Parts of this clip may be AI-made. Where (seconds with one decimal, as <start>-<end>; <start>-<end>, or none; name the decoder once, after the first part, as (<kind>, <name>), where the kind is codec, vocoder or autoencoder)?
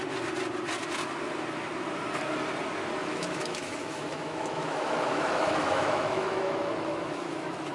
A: 3.0-7.7 (autoencoder, DAC-VAE)